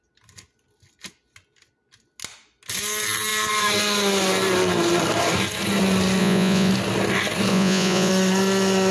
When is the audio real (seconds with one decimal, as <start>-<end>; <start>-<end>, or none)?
0.0-6.2; 6.7-7.5; 8.1-8.9